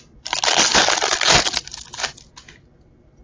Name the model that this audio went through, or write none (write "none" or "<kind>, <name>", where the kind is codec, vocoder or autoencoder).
none